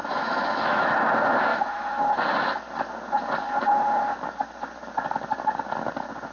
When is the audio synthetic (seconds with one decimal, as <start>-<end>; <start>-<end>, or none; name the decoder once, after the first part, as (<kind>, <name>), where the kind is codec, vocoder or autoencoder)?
0.0-1.1 (autoencoder, DAC-VAE); 1.5-2.2